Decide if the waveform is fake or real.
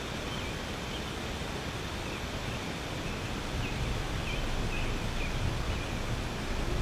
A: real